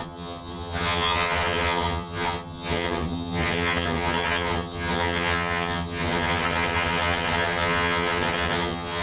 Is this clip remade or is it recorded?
remade